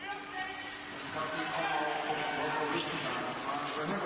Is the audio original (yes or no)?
yes